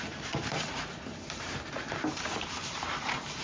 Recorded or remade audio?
remade